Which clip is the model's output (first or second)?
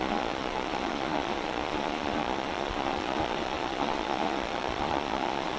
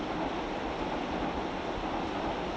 first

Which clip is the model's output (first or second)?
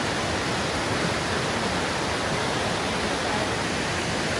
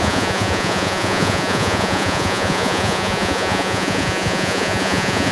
second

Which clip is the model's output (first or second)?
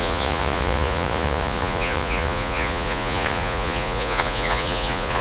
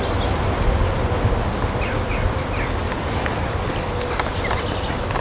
first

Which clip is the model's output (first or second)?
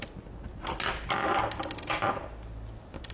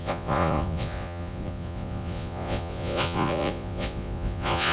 second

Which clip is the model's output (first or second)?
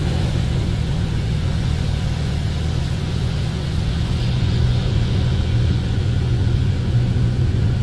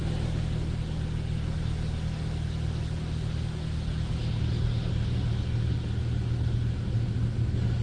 first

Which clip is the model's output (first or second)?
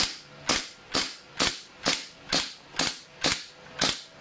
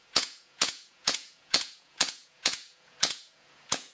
second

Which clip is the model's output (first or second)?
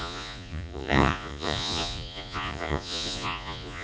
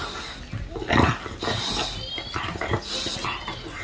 first